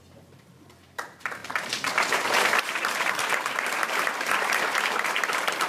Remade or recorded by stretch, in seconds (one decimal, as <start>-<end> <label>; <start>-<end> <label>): 0.0-5.7 remade

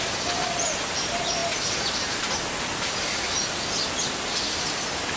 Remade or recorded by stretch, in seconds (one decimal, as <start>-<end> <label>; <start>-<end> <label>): 0.0-5.2 recorded

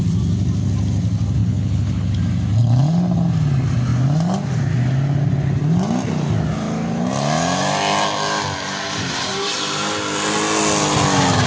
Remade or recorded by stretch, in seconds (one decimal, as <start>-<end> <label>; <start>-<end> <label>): 0.0-1.4 recorded; 1.4-2.2 remade; 2.2-11.5 recorded

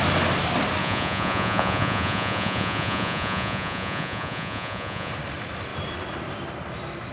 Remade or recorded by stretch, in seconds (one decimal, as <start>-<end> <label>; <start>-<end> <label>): 0.0-0.8 recorded; 0.8-5.1 remade; 5.1-7.1 recorded

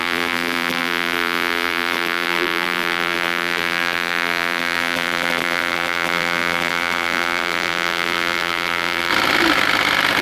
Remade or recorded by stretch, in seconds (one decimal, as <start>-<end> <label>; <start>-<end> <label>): 0.0-9.1 remade; 9.1-10.2 recorded

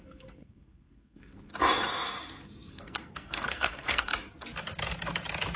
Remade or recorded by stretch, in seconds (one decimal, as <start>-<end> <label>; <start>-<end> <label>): 0.0-1.5 remade; 1.5-2.7 recorded; 2.7-4.1 remade; 4.1-5.6 recorded